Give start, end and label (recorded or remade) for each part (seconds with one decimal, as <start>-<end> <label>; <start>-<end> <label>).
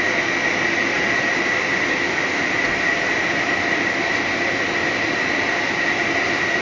0.0-6.6 recorded